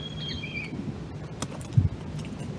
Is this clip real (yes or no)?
yes